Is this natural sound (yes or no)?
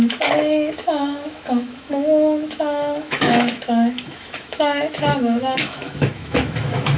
no